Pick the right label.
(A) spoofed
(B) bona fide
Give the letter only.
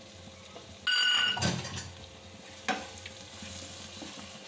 B